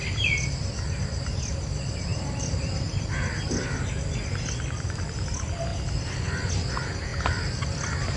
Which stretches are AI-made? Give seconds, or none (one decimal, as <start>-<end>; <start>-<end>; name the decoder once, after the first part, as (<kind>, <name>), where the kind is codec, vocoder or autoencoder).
none